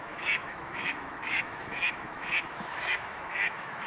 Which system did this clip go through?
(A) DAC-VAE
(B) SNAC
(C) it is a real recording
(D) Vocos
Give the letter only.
A